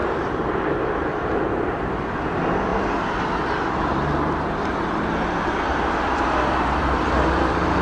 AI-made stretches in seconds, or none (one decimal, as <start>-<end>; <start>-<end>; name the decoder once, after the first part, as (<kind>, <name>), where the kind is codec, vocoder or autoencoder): 0.0-2.7 (vocoder, BigVGAN v2); 3.7-7.8